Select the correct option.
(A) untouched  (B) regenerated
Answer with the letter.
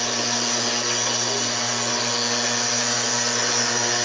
A